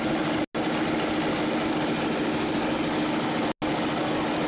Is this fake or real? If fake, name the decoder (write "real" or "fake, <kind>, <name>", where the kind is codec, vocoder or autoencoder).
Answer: real